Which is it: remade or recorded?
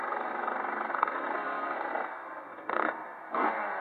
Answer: remade